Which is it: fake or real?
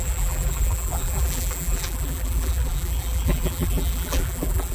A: fake